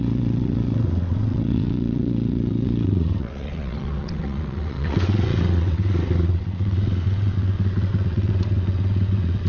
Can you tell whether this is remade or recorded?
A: remade